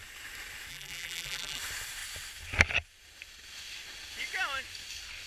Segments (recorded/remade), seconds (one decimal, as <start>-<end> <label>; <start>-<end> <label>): 0.0-0.7 recorded; 0.7-1.6 remade; 1.6-5.3 recorded

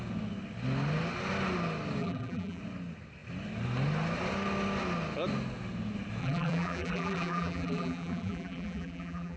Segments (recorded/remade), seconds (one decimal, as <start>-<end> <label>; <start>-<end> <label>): 0.0-2.0 recorded; 2.0-2.6 remade; 2.6-6.2 recorded; 6.2-9.4 remade

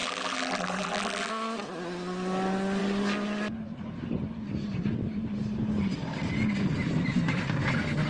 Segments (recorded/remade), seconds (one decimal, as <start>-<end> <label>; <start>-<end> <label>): 0.0-1.3 remade; 1.3-8.1 recorded